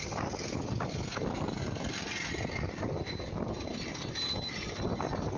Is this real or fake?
real